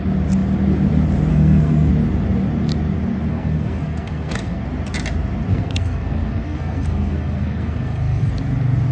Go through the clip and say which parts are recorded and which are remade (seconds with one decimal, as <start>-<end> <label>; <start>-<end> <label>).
0.0-1.3 recorded; 1.3-1.9 remade; 1.9-3.3 recorded; 3.3-4.6 remade; 4.6-5.5 recorded; 5.5-8.3 remade; 8.3-8.9 recorded